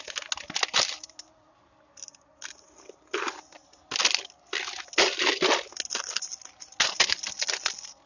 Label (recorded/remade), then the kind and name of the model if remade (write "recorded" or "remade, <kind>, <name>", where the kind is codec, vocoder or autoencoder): recorded